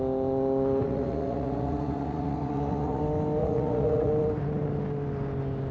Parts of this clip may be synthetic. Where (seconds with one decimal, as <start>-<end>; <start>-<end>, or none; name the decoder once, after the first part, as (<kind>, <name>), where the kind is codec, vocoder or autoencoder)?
0.8-3.0 (vocoder, Vocos); 3.4-4.1